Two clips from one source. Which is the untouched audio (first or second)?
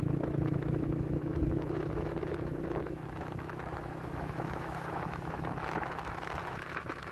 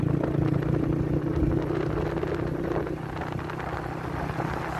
second